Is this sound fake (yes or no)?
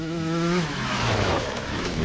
yes